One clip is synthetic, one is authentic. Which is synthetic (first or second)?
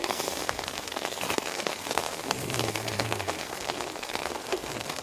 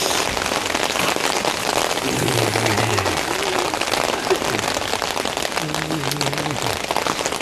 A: first